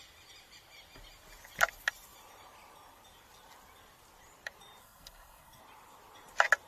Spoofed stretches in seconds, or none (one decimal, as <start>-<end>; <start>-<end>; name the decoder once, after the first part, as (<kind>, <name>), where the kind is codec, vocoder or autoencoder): 4.8-5.6 (codec, SNAC)